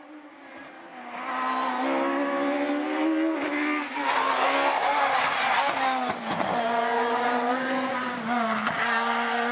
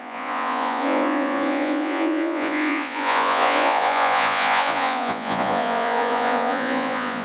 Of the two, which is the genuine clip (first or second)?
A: first